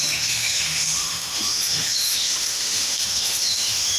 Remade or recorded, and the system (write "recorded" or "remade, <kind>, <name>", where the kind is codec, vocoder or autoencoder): remade, autoencoder, DAC-VAE